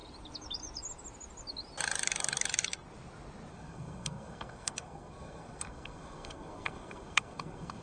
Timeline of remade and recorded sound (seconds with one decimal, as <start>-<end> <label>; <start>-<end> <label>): 0.0-3.5 recorded; 3.5-7.8 remade